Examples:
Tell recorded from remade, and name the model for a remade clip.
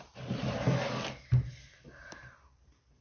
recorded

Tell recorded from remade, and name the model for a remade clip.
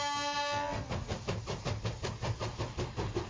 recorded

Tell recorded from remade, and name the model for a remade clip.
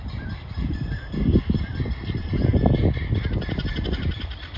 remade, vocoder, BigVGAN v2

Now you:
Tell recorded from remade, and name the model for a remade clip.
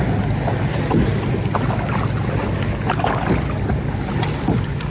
recorded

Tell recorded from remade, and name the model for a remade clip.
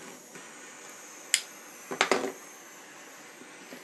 recorded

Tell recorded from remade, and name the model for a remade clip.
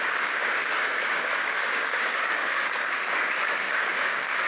remade, codec, DAC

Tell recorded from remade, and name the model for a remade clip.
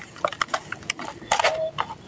recorded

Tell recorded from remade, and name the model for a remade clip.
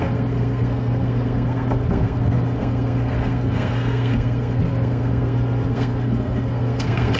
remade, codec, SNAC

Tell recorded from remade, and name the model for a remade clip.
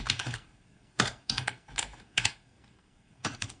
remade, codec, SNAC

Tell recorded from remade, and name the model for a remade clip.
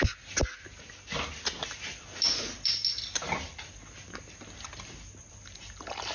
recorded